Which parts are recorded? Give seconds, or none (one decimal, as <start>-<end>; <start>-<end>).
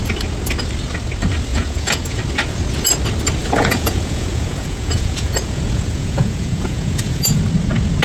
0.0-1.5; 2.2-3.4; 7.4-8.0